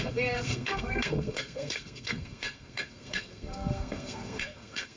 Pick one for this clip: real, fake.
fake